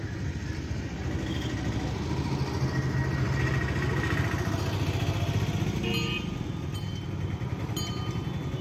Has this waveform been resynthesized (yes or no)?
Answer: no